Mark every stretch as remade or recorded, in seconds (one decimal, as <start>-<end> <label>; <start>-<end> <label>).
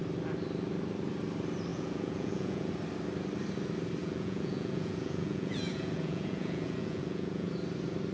0.0-1.7 recorded; 1.7-2.7 remade; 2.7-4.0 recorded; 4.0-7.5 remade; 7.5-8.1 recorded